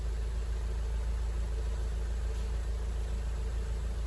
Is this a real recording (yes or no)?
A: yes